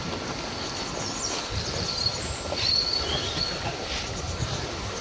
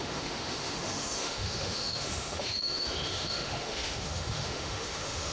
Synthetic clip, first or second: second